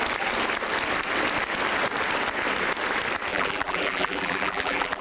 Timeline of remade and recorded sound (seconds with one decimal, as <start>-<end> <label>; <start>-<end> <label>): 0.0-3.3 recorded; 3.3-5.0 remade